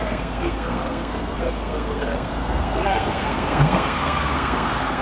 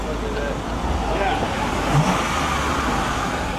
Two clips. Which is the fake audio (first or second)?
first